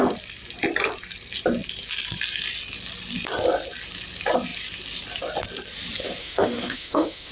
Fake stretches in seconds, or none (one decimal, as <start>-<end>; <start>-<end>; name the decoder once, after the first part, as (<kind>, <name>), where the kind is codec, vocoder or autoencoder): 6.2-7.3 (autoencoder, DAC-VAE)